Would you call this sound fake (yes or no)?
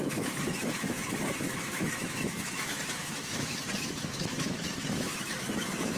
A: yes